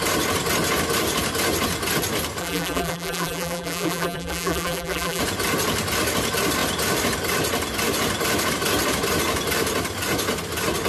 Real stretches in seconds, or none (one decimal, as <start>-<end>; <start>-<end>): 0.0-2.4; 5.2-10.9